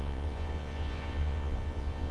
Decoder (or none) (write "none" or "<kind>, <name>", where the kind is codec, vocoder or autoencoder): vocoder, Vocos